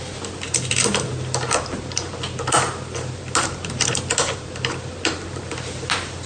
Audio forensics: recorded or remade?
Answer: recorded